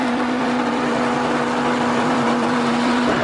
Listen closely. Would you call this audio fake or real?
fake